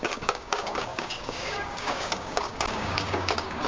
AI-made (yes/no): yes